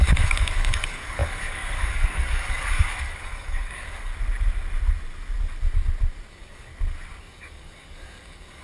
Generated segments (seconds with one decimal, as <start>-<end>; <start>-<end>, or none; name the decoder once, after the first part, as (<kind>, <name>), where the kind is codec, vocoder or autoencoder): 0.0-4.1 (codec, DAC); 6.3-6.7; 7.2-8.6